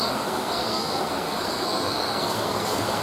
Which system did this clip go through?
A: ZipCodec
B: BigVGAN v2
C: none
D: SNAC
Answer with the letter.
D